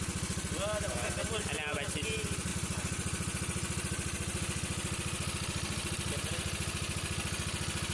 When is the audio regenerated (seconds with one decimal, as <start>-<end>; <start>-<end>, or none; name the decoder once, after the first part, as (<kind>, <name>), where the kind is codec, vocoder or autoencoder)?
none